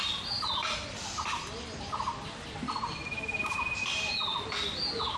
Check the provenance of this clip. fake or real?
real